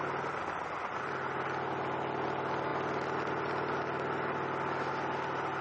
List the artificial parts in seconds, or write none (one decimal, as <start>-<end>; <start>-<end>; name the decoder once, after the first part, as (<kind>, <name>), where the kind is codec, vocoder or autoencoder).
none